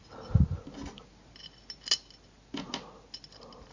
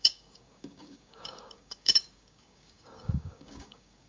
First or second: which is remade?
second